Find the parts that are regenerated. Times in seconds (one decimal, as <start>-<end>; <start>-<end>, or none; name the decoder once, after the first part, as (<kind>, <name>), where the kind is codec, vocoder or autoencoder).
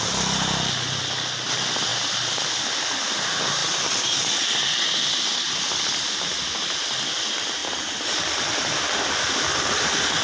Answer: 3.6-4.5 (vocoder, BigVGAN v2)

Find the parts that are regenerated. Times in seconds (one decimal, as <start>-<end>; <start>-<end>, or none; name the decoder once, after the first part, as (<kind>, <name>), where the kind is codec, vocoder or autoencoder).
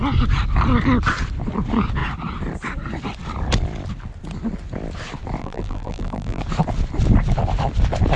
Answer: 5.4-6.4 (vocoder, BigVGAN v2)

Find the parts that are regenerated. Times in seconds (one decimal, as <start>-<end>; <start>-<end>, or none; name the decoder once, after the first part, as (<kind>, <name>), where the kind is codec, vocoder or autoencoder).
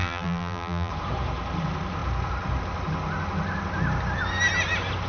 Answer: 0.0-0.9 (vocoder, BigVGAN v2)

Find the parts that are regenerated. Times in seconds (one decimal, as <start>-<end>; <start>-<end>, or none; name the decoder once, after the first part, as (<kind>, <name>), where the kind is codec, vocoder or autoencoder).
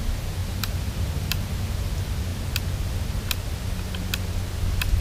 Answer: 0.4-1.9 (vocoder, BigVGAN v2)